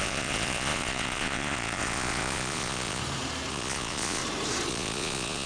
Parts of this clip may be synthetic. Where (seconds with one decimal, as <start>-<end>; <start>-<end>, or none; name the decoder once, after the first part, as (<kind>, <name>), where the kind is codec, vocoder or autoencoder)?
0.0-3.0 (vocoder, Vocos); 3.5-4.2; 4.7-5.5